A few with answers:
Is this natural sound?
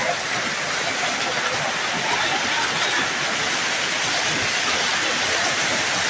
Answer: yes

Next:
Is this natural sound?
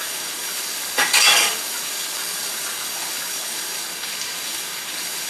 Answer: no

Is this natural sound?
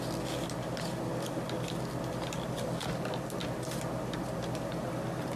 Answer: yes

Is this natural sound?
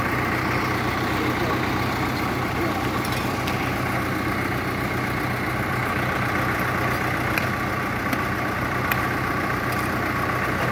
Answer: yes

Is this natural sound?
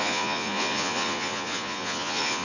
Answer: no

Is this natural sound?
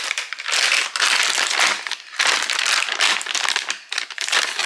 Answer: yes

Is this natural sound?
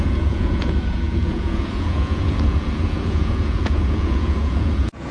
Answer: no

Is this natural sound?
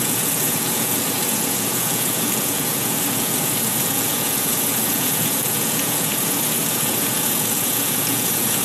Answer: no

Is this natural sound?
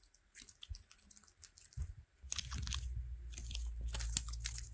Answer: yes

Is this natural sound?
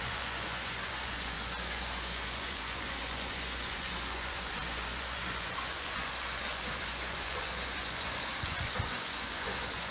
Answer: no